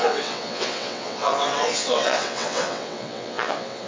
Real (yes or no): no